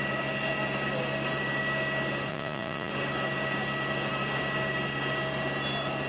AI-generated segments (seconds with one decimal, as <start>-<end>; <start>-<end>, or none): 2.3-2.9